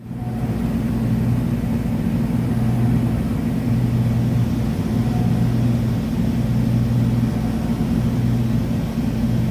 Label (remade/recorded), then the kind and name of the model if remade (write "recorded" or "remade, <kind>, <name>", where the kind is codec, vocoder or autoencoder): recorded